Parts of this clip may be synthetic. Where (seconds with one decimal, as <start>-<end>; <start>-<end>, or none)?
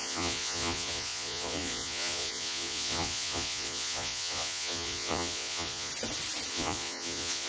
0.0-5.9; 6.5-7.5